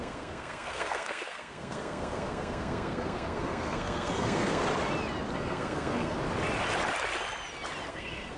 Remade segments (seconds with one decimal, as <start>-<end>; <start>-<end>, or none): 0.0-4.6; 5.3-6.2; 7.9-8.4